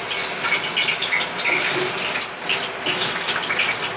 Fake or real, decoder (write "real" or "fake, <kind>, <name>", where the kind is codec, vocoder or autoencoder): real